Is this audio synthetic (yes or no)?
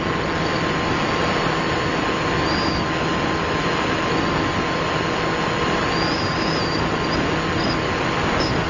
no